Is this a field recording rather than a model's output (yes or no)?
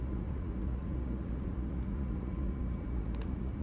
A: no